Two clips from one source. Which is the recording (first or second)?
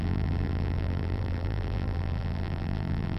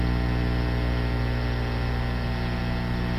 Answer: second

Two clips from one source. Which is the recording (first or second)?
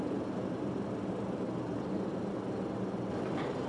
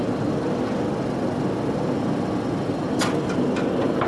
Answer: second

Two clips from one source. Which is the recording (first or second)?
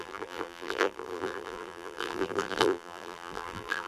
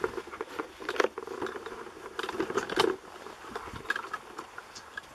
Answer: second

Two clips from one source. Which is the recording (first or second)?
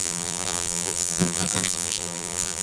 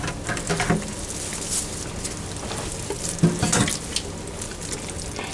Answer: second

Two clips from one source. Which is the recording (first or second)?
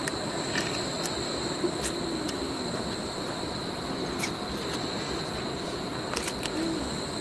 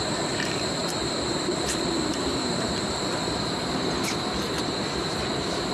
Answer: first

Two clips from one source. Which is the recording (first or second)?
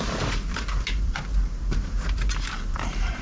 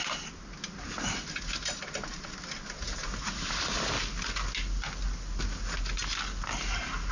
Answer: second